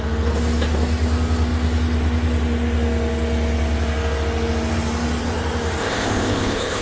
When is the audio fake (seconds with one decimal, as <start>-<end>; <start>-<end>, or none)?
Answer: 5.8-6.8